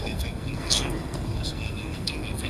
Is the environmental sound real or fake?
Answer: fake